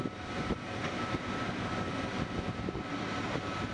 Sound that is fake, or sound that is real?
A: real